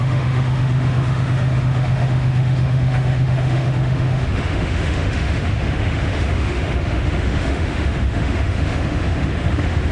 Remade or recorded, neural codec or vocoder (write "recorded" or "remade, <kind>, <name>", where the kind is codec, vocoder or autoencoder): remade, autoencoder, DAC-VAE